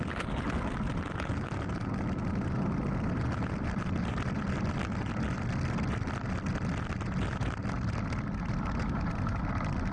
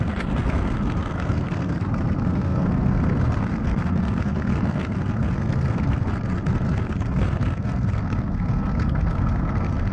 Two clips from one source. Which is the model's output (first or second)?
second